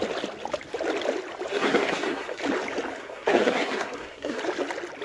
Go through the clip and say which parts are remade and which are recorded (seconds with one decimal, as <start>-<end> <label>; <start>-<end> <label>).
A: 0.0-1.5 recorded; 1.5-2.4 remade; 2.4-3.0 recorded; 3.0-4.4 remade; 4.4-5.0 recorded